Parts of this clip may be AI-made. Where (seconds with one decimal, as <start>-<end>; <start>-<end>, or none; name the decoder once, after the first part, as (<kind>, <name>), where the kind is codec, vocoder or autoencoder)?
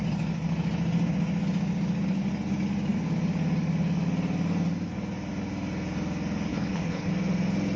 6.5-7.1 (codec, HILCodec)